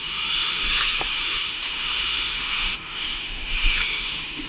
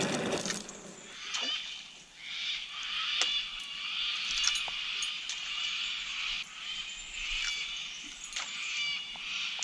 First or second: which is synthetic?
first